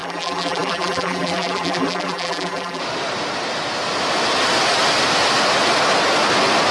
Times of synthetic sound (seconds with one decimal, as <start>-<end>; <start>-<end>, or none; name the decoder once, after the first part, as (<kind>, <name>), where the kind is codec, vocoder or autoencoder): 0.0-2.8 (vocoder, BigVGAN v2)